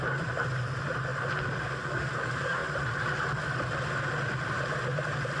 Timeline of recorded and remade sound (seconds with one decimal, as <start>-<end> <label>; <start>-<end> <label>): 0.0-5.4 recorded